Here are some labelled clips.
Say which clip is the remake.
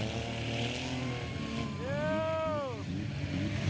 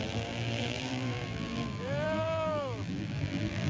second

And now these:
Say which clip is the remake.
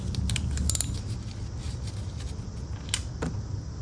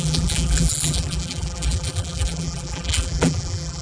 second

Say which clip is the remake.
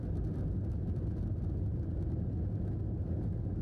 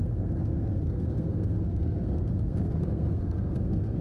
second